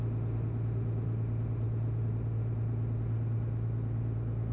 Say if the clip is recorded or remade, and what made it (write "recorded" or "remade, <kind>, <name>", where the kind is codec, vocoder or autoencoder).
recorded